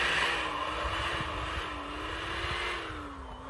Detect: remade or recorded recorded